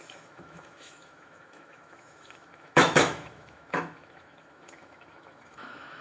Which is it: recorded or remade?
remade